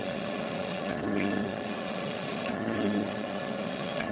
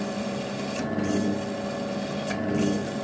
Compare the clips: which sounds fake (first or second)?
first